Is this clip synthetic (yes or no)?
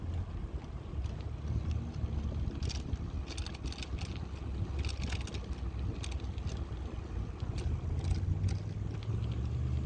no